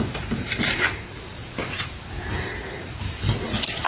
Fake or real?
fake